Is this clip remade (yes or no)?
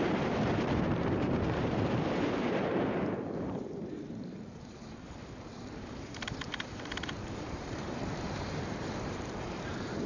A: yes